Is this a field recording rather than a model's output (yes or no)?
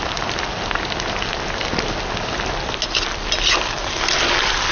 yes